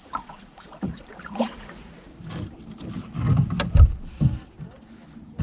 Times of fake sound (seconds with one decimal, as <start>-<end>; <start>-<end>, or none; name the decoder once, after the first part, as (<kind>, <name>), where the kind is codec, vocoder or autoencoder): 0.0-2.1 (vocoder, Vocos)